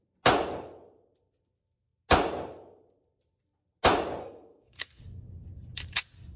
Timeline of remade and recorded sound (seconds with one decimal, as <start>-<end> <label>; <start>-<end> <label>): 0.0-4.2 recorded; 4.2-5.0 remade; 5.0-6.4 recorded